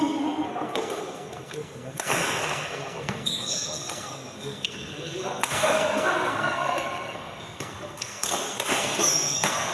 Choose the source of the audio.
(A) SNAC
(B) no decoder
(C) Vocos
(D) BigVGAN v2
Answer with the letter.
A